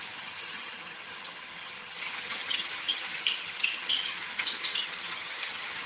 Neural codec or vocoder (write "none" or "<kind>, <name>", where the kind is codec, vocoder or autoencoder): vocoder, HiFi-GAN